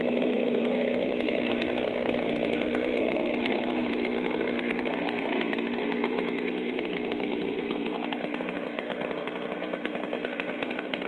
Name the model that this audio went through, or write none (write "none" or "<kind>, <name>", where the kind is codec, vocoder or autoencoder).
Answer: codec, SNAC